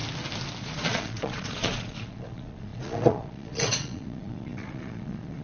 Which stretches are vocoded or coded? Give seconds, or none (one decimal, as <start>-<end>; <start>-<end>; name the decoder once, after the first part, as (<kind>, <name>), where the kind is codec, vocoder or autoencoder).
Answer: 0.6-5.4 (vocoder, Vocos)